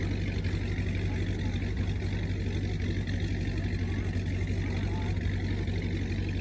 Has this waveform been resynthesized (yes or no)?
no